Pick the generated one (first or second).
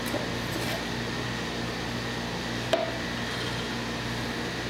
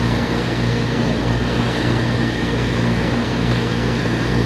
second